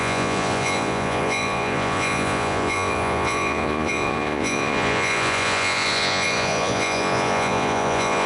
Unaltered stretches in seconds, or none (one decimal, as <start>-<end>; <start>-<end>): none

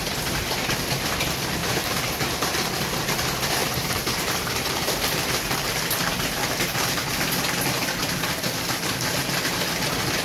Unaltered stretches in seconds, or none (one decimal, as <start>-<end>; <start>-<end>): 0.0-1.6; 2.5-3.6; 7.1-10.2

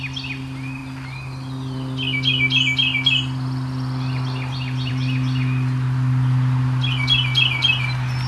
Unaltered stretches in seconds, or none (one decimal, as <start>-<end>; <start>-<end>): 0.0-8.3

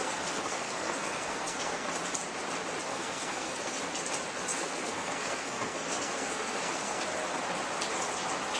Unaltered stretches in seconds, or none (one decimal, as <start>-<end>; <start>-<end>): 1.9-2.9; 3.8-4.5; 7.0-8.6

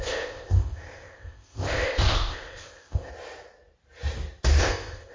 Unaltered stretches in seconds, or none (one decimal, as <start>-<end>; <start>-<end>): 3.1-4.6

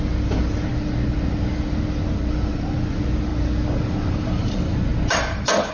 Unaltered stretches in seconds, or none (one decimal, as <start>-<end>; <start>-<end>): 0.7-2.9; 3.3-4.2; 4.9-5.7

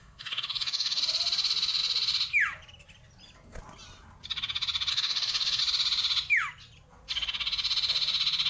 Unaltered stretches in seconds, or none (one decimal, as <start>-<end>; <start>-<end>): 1.0-4.9; 5.6-8.5

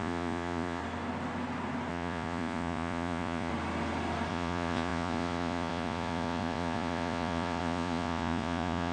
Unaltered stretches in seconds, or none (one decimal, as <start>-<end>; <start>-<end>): 0.8-1.9; 3.5-4.3